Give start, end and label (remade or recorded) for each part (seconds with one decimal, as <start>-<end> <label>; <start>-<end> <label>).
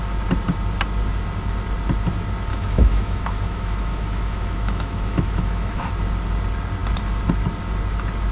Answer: 0.0-2.5 recorded; 2.5-5.9 remade; 5.9-8.3 recorded